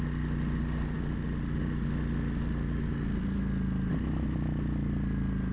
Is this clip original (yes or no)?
yes